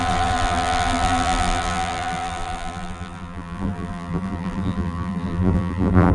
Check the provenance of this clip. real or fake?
fake